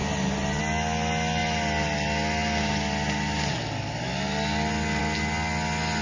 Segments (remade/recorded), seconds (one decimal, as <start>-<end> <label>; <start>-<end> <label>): 0.0-0.6 remade; 0.6-6.0 recorded